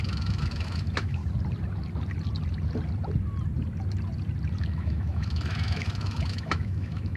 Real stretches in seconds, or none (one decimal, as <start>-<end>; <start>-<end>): 1.2-4.6